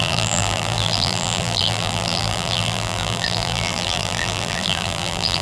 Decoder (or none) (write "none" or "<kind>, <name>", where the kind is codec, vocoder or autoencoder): vocoder, BigVGAN v2